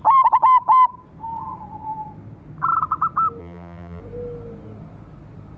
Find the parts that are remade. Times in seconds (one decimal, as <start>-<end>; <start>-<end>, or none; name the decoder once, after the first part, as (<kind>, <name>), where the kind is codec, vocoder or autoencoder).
3.4-4.0 (vocoder, BigVGAN v2)